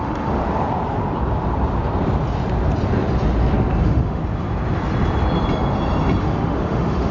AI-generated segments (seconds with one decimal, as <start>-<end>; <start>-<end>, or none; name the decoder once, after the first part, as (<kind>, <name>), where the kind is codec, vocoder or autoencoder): 0.0-0.4 (autoencoder, DAC-VAE); 3.8-4.2; 6.2-7.1